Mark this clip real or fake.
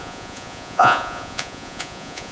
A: fake